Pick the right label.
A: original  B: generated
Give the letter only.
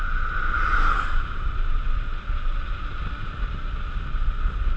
A